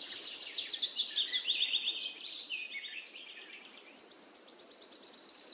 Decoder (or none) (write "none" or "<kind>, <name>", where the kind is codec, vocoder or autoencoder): none